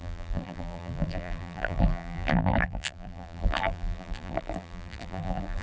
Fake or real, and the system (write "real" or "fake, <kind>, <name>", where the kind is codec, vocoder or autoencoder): fake, vocoder, BigVGAN v2